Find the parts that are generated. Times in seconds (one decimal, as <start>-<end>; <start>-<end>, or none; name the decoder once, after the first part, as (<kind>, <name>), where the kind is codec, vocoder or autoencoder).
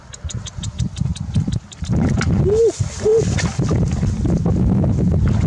none